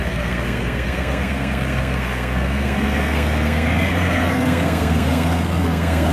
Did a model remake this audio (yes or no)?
yes